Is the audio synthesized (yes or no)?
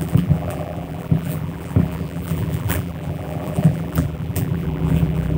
yes